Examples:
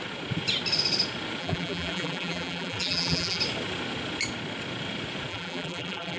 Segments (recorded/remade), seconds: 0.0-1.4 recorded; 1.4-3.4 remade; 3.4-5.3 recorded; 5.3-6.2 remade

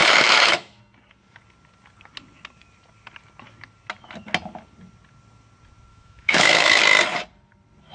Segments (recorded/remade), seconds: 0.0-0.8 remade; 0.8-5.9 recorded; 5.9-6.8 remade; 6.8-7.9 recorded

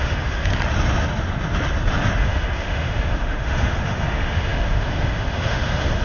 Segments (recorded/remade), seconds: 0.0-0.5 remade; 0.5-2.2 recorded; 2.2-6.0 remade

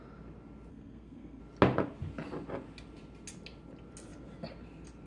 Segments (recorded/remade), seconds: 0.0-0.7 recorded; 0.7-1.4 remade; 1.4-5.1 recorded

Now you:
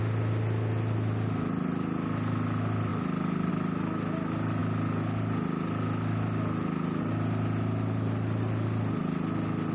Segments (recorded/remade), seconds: 0.0-9.7 recorded

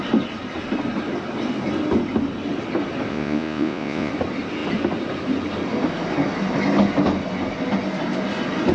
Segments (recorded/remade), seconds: 0.0-3.1 recorded; 3.1-4.1 remade; 4.1-8.7 recorded

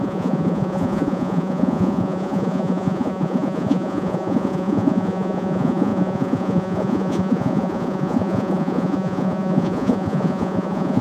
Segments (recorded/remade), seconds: 0.0-11.0 remade